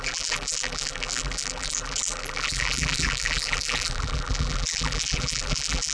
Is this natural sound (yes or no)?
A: no